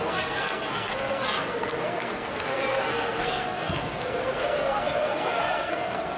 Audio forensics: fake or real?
fake